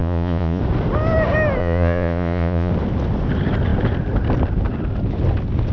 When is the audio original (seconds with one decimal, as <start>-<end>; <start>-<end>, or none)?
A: 0.6-1.6; 2.7-5.7